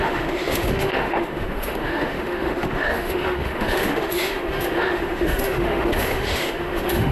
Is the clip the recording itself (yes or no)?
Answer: no